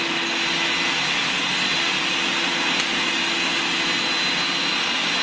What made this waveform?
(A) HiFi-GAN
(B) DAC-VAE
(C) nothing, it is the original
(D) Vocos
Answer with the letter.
C